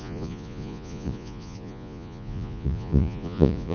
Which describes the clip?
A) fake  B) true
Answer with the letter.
A